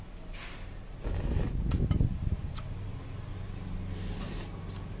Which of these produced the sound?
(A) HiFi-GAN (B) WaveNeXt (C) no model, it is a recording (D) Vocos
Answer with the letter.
C